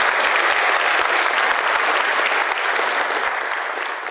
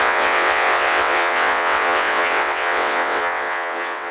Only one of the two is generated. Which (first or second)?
second